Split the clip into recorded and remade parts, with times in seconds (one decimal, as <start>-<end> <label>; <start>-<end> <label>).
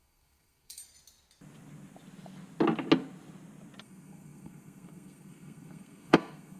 0.0-0.8 remade; 0.8-3.8 recorded; 3.8-6.6 remade